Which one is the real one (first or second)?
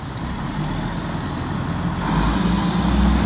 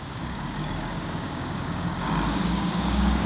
first